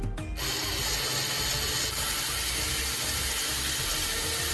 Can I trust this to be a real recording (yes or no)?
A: yes